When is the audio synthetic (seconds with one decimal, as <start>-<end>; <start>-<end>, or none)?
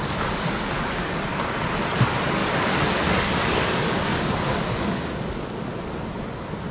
0.0-1.3; 1.9-5.7